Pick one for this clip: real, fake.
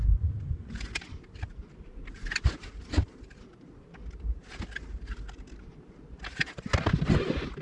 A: real